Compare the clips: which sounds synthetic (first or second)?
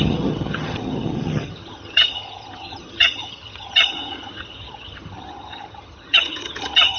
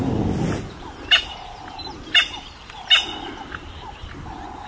first